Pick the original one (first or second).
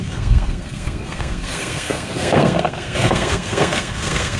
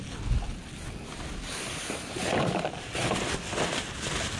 second